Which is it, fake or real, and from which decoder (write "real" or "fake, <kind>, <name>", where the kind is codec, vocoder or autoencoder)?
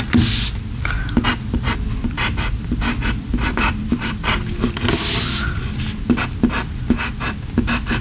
real